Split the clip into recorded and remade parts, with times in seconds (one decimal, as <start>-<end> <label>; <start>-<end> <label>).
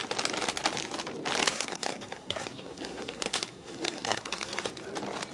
0.0-1.5 recorded; 1.5-4.7 remade; 4.7-5.3 recorded